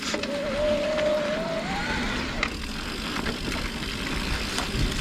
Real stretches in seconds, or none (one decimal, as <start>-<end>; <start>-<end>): 0.0-5.0